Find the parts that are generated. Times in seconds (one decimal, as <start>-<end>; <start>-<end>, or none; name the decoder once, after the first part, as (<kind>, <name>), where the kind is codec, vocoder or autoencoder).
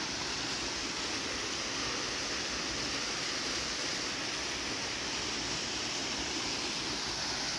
none